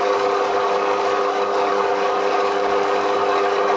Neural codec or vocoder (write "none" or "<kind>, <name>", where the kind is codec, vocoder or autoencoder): codec, DAC